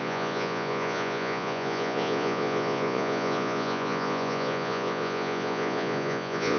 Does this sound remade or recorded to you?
remade